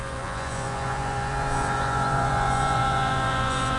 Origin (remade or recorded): remade